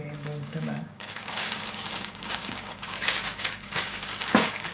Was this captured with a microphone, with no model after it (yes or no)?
no